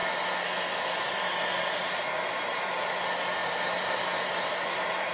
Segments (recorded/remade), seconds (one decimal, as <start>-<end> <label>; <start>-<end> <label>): 0.0-1.8 recorded; 1.8-2.8 remade; 2.8-3.4 recorded; 3.4-5.1 remade